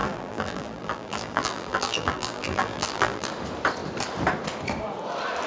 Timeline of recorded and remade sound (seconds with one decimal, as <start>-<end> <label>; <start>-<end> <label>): 0.0-3.3 remade; 3.3-5.5 recorded